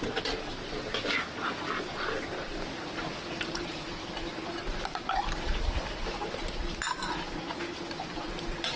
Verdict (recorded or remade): recorded